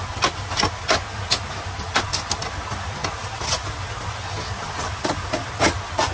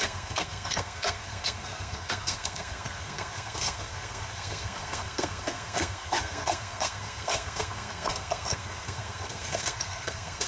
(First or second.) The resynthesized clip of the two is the second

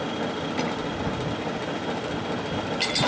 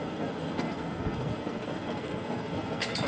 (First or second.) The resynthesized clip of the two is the second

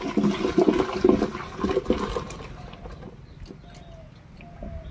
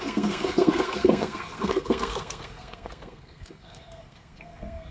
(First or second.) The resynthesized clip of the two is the second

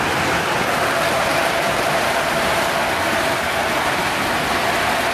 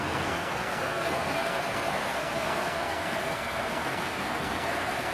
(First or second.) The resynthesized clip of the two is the second